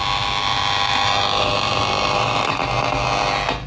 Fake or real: real